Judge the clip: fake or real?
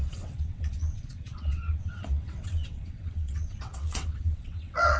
fake